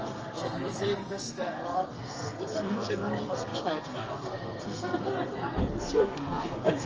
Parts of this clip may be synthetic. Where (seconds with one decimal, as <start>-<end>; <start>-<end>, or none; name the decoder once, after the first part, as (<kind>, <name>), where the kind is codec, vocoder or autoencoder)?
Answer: 0.0-5.1 (codec, SNAC); 5.7-6.9

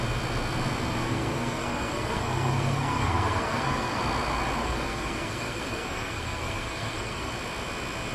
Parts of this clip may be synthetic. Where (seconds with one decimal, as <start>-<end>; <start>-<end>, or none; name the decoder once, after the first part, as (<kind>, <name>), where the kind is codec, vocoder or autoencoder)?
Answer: 1.0-4.0 (codec, SNAC); 4.6-7.3

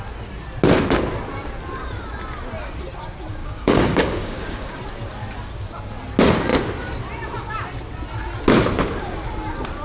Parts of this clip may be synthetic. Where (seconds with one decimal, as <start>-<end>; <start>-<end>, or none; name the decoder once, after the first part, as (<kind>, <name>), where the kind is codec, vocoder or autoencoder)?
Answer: 3.4-4.8 (codec, DAC)

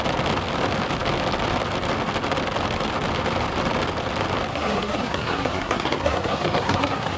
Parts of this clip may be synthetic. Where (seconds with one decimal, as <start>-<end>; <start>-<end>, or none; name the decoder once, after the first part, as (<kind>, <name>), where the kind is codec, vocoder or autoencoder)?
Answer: 4.5-7.2 (codec, SNAC)

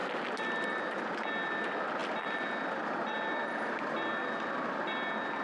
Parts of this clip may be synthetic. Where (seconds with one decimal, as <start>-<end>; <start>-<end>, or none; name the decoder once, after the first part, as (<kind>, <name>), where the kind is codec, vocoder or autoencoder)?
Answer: none

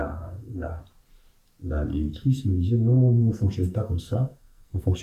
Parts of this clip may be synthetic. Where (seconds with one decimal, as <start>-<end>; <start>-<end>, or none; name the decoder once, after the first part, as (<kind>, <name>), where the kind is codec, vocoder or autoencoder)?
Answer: 0.0-0.8 (codec, SNAC); 1.9-5.0

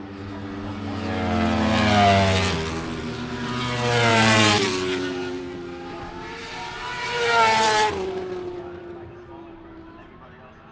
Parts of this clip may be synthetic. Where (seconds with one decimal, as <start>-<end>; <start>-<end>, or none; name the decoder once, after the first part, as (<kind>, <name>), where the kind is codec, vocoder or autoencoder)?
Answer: 4.1-5.4 (vocoder, BigVGAN v2)